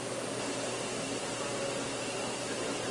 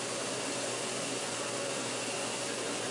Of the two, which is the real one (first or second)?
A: first